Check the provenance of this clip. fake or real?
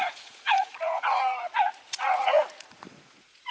fake